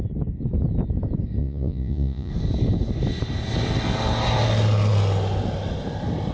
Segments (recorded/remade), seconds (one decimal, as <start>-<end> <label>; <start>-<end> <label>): 0.0-1.4 recorded; 1.4-2.3 remade; 2.3-6.3 recorded

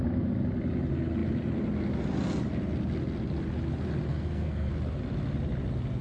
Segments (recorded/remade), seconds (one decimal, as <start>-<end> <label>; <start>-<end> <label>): 0.0-4.1 recorded; 4.1-4.7 remade; 4.7-6.0 recorded

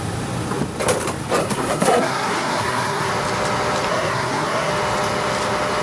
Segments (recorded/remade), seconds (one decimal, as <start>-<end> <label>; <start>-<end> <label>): 0.0-1.4 recorded; 1.4-3.1 remade; 3.1-3.9 recorded; 3.9-4.7 remade; 4.7-5.8 recorded

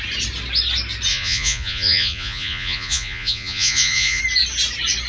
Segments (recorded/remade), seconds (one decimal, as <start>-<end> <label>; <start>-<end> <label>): 0.0-1.1 recorded; 1.1-4.2 remade; 4.2-5.1 recorded

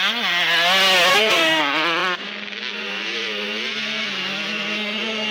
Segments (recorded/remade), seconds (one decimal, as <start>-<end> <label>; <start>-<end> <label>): 0.0-1.1 recorded; 1.1-1.6 remade; 1.6-5.3 recorded

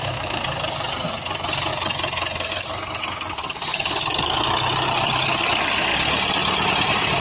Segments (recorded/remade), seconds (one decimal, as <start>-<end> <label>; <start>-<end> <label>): 0.0-1.7 remade; 1.7-2.5 recorded; 2.5-5.9 remade; 5.9-6.7 recorded; 6.7-7.2 remade

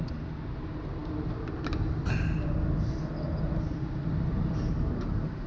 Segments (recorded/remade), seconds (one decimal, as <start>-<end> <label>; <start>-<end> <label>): 0.0-5.5 recorded